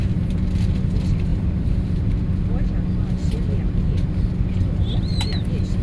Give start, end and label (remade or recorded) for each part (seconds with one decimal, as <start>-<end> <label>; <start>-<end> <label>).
0.0-1.3 recorded; 1.3-2.0 remade; 2.0-5.8 recorded